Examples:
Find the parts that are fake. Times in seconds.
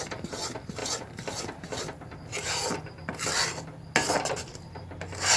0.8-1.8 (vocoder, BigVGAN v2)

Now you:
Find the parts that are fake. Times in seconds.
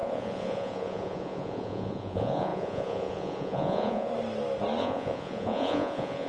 0.0-4.1 (vocoder, Vocos); 4.8-6.3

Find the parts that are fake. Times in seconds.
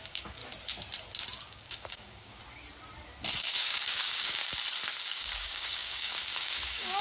0.0-0.4 (codec, DAC); 1.4-2.4; 3.4-4.4; 5.0-7.0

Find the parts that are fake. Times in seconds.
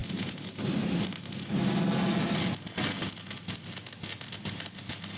0.0-0.9 (vocoder, BigVGAN v2)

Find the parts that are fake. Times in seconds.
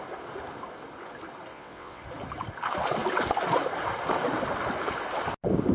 1.5-2.0 (vocoder, WaveNeXt)